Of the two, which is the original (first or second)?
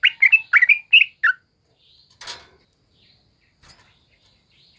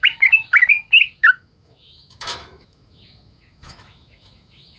first